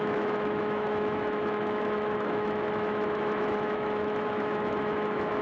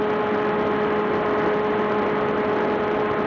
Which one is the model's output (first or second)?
first